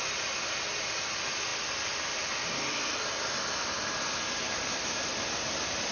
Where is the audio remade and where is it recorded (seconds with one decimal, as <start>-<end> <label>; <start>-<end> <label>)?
0.0-5.9 recorded